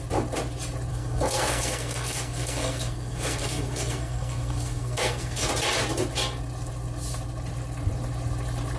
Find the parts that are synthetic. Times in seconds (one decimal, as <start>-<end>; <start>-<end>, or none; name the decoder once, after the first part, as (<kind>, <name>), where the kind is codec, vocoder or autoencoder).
0.9-5.5 (codec, SNAC)